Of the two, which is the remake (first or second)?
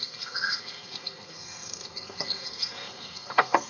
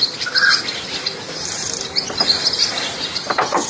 first